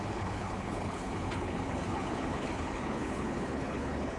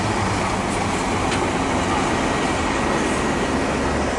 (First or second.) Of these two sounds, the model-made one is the first